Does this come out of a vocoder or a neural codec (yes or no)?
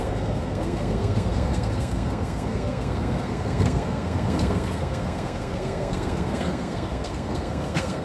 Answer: yes